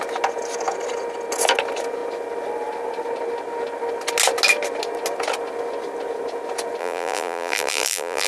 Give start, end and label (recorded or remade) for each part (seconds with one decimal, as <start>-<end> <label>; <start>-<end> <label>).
0.0-6.8 recorded; 6.8-8.3 remade